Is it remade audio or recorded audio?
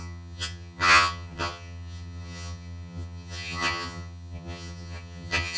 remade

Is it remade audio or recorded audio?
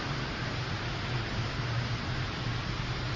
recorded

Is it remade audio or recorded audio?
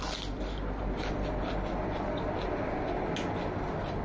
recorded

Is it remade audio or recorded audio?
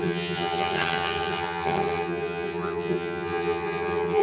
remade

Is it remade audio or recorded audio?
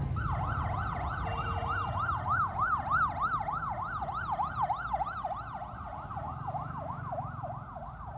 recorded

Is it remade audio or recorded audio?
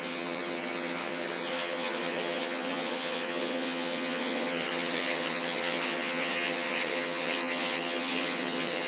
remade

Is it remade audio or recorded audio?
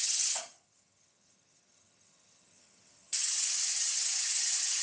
remade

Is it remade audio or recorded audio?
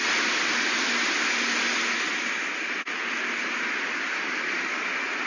recorded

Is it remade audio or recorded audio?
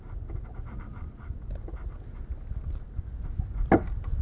recorded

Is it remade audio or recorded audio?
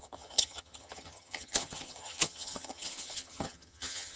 remade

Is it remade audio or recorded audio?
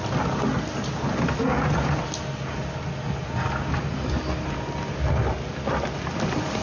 recorded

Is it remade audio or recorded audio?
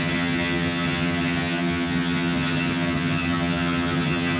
remade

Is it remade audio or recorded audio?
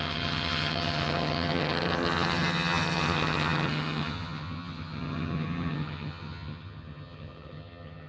remade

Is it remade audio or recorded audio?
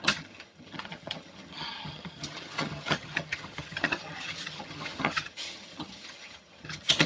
remade